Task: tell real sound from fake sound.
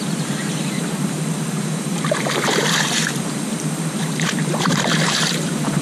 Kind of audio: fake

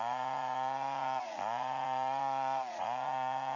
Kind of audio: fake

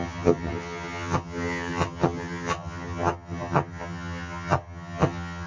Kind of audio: fake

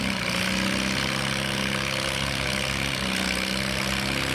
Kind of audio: real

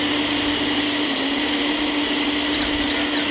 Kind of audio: real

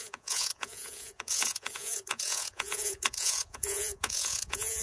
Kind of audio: fake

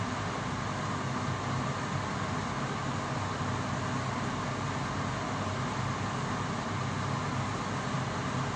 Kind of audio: real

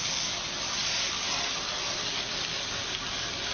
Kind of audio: real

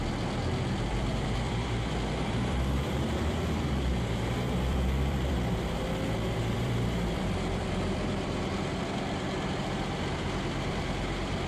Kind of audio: fake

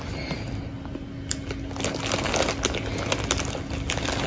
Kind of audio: real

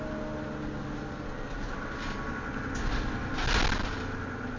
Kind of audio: real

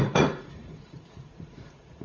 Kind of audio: fake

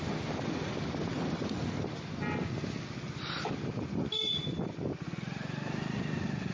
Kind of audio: real